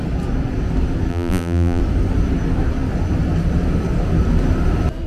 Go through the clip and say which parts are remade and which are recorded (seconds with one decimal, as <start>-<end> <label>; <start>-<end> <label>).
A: 0.0-1.1 recorded; 1.1-1.8 remade; 1.8-5.1 recorded